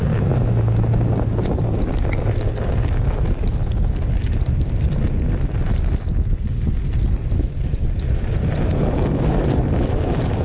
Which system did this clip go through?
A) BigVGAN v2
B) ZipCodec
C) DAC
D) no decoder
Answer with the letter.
D